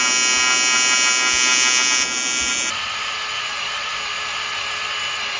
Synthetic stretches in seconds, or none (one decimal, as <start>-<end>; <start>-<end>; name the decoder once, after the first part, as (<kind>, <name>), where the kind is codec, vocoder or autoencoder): none